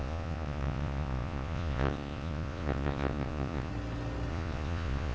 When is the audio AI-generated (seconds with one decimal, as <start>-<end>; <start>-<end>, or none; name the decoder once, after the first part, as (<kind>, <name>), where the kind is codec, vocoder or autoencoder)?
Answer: 0.0-3.7 (vocoder, Vocos); 4.3-5.1